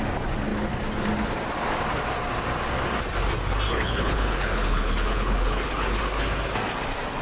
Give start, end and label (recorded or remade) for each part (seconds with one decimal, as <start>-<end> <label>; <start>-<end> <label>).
0.0-3.7 recorded; 3.7-6.0 remade; 6.0-7.2 recorded